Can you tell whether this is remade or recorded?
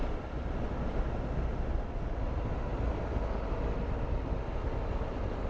recorded